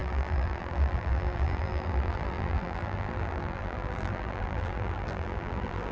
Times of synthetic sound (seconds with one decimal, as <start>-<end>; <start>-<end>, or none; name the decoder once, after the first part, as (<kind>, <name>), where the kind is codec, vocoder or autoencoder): 0.0-5.9 (vocoder, BigVGAN v2)